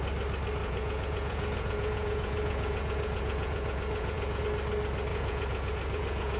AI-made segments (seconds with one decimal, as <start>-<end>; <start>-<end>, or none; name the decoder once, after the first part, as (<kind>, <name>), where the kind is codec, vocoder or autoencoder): 0.6-4.4 (vocoder, Vocos); 5.1-6.4